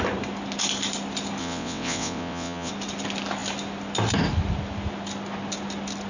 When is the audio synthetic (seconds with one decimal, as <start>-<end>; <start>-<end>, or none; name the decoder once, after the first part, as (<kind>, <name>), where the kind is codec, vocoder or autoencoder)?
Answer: 1.4-2.7 (vocoder, WaveNeXt)